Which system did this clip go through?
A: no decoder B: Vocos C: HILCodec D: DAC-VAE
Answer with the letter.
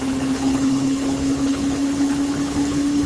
C